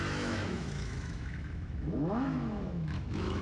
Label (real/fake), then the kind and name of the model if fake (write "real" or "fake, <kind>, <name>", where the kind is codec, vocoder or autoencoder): fake, autoencoder, DAC-VAE